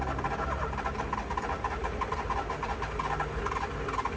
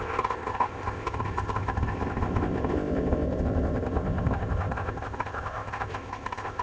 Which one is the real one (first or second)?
first